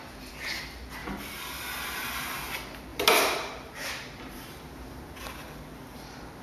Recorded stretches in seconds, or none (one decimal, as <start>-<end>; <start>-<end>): 0.0-2.9; 5.0-6.4